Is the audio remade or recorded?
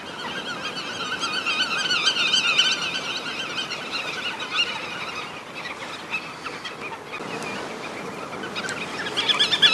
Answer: recorded